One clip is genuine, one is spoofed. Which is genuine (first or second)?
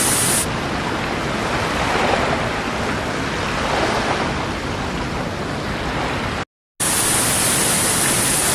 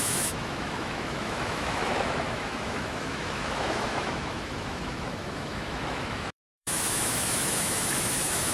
first